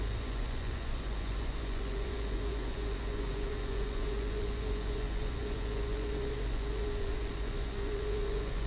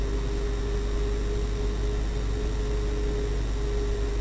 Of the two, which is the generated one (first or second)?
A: first